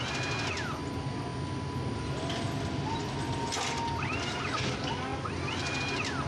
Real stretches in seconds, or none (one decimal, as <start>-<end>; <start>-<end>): 0.0-6.3